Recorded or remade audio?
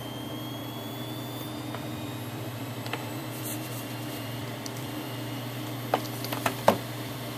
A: remade